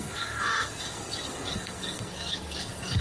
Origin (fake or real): fake